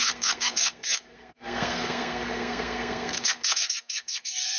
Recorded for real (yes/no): no